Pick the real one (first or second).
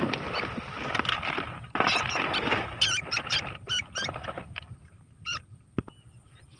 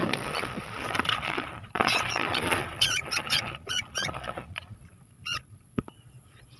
first